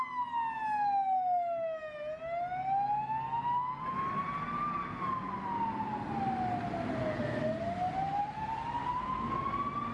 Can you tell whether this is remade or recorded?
recorded